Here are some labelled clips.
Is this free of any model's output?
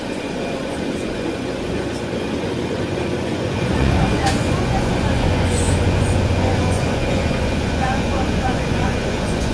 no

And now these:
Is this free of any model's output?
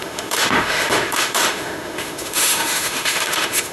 no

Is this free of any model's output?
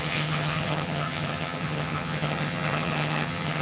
no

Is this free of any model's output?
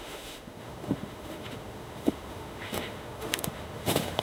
no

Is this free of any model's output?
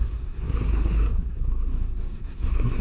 no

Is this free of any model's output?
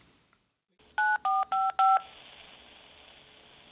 yes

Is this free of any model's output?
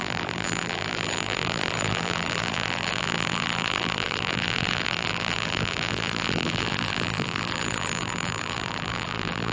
no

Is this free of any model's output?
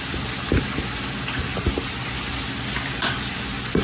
yes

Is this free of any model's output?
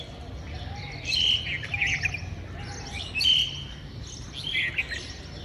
yes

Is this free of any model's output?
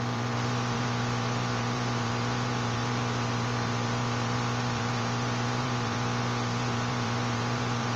no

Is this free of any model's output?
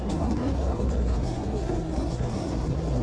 no